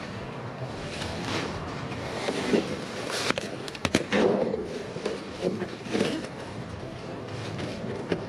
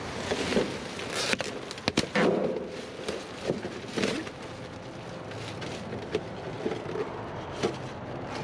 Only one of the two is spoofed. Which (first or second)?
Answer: first